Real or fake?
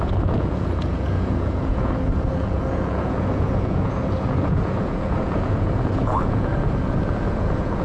fake